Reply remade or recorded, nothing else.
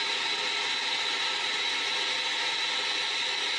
recorded